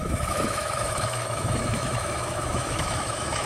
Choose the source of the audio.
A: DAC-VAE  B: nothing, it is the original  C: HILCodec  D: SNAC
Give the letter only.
A